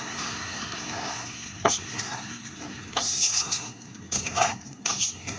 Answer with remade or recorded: remade